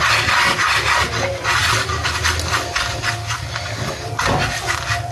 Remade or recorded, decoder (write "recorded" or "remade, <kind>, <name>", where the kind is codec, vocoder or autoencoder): recorded